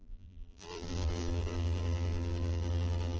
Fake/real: fake